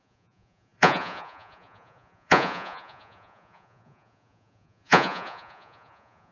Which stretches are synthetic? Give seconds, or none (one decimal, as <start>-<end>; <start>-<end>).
0.0-6.3